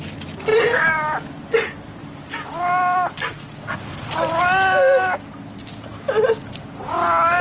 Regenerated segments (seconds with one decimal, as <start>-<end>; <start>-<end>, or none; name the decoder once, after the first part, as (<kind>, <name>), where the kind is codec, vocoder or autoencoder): none